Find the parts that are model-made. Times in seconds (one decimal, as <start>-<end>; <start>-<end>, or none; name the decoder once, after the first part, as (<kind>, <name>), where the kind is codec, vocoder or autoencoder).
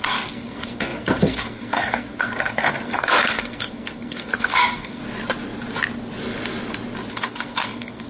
0.0-5.0 (codec, SNAC); 7.1-8.1